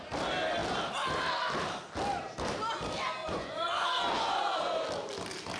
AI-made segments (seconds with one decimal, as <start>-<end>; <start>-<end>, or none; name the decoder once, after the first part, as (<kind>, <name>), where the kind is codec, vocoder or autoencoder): 3.2-4.4 (vocoder, Vocos)

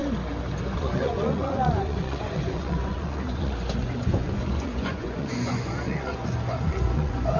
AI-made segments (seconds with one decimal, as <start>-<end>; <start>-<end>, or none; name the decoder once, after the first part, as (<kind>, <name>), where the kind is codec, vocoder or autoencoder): 0.8-7.4 (vocoder, Vocos)

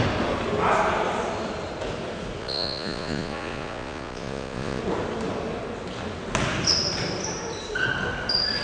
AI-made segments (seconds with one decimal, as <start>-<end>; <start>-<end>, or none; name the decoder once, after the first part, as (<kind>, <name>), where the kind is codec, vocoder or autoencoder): 2.4-4.8 (vocoder, Vocos)